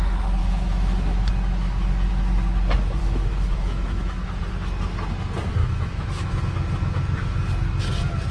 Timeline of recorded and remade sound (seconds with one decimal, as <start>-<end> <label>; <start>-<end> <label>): 0.0-0.4 recorded; 0.4-1.3 remade; 1.3-3.0 recorded; 3.0-4.4 remade; 4.4-5.6 recorded; 5.6-6.4 remade; 6.4-8.3 recorded